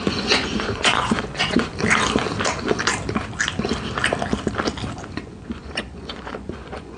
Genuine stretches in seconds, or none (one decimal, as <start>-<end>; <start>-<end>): 1.7-5.0